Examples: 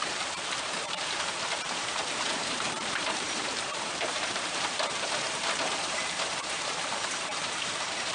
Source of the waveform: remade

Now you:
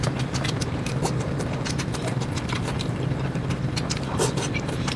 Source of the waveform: remade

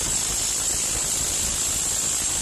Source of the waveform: recorded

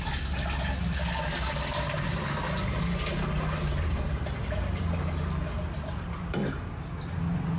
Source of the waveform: recorded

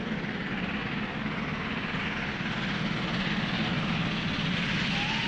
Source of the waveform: recorded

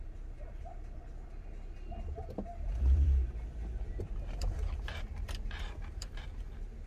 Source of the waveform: remade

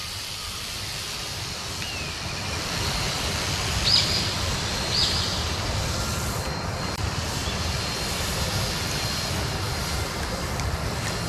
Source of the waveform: remade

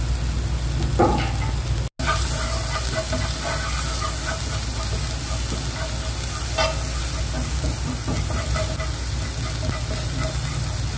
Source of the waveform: recorded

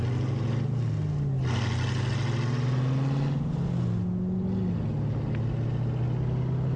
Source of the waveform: recorded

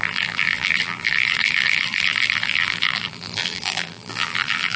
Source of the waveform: remade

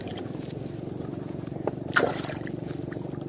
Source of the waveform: recorded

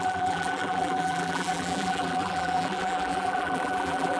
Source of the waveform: remade